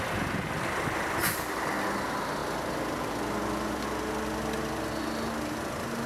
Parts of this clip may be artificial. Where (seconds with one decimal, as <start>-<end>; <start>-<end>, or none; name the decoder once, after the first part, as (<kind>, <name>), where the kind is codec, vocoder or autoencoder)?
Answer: none